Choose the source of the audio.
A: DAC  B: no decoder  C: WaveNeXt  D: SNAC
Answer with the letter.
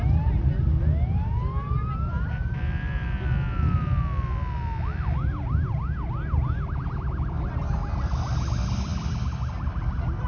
B